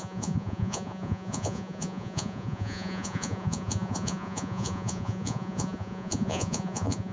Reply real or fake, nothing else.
fake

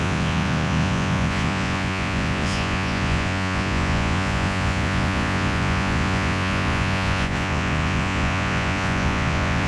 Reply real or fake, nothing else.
fake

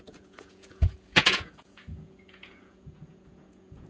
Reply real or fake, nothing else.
fake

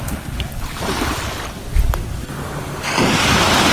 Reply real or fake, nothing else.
real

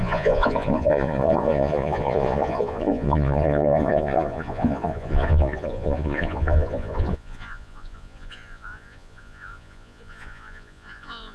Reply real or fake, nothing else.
fake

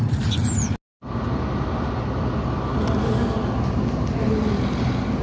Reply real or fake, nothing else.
real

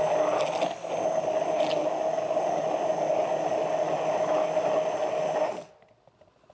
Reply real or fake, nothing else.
real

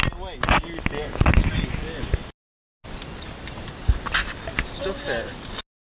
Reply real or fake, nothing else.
real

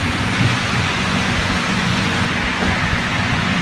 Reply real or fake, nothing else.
fake